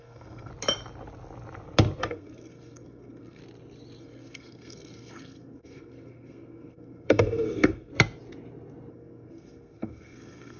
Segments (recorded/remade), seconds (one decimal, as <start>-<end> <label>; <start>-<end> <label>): 0.0-0.5 remade; 0.5-2.0 recorded; 2.0-3.4 remade; 3.4-4.0 recorded; 4.0-7.9 remade; 7.9-8.9 recorded; 8.9-10.6 remade